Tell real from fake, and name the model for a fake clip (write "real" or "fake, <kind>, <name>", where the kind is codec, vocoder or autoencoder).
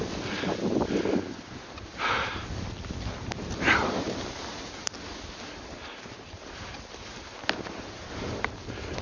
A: real